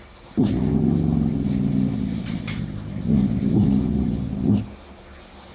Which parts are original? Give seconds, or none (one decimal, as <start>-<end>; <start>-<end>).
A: 0.0-5.5